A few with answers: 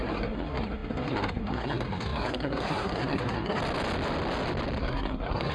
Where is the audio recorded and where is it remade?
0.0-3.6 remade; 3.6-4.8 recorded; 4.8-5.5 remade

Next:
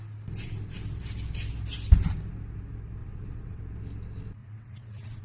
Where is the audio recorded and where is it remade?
0.0-3.0 recorded; 3.0-3.6 remade; 3.6-4.4 recorded; 4.4-5.2 remade

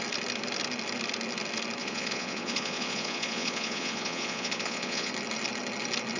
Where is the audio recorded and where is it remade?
0.0-1.8 recorded; 1.8-5.1 remade; 5.1-6.2 recorded

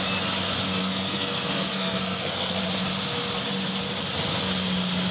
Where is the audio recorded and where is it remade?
0.0-0.8 recorded; 0.8-2.6 remade; 2.6-5.1 recorded

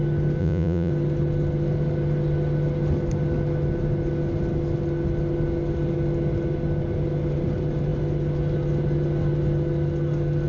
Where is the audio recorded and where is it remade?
0.0-0.4 recorded; 0.4-0.9 remade; 0.9-10.5 recorded